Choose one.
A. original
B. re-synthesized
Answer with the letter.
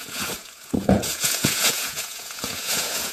B